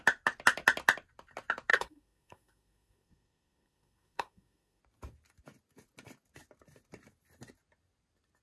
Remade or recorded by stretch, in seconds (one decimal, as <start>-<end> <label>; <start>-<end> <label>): 0.0-1.7 recorded; 1.7-4.8 remade; 4.8-8.4 recorded